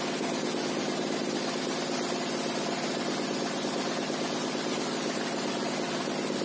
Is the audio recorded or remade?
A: recorded